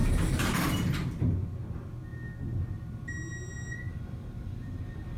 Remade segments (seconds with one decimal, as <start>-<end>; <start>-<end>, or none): none